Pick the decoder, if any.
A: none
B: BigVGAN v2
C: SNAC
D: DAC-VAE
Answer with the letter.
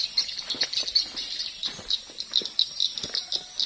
A